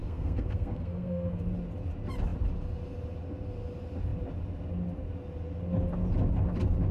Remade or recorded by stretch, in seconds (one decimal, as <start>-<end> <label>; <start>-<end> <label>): 0.0-1.4 remade; 1.4-6.9 recorded